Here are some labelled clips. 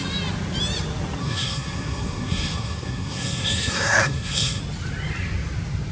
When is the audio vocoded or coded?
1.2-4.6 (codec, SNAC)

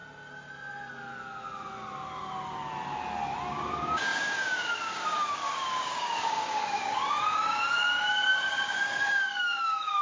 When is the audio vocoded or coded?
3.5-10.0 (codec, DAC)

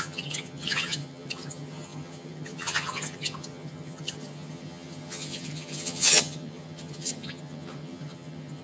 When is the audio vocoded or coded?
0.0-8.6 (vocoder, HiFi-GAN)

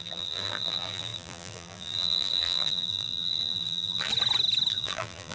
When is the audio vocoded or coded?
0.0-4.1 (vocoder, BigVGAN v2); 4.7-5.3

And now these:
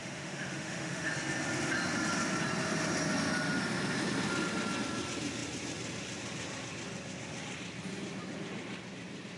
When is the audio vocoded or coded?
0.0-1.1 (autoencoder, DAC-VAE)